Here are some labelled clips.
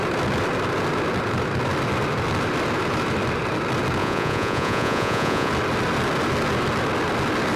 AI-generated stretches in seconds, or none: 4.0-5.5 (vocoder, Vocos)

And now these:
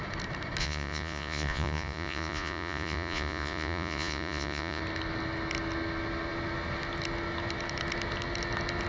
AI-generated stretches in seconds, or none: 0.6-4.8 (vocoder, Vocos)

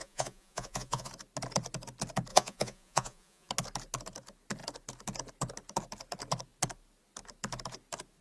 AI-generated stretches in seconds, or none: 0.0-1.1 (vocoder, Vocos); 2.3-3.5

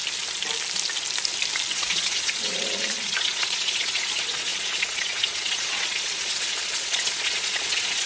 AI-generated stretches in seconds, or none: 1.7-8.1 (vocoder, Vocos)

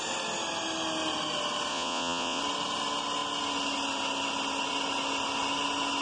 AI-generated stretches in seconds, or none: 1.7-2.4 (vocoder, Vocos)

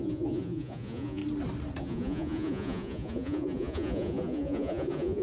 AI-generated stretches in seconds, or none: 0.0-1.2 (vocoder, Vocos); 1.8-5.2

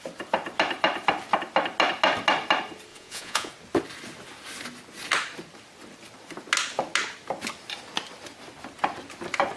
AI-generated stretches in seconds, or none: 2.9-3.5 (vocoder, Vocos)

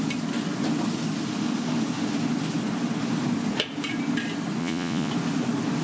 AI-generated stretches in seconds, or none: 4.6-5.1 (vocoder, Vocos)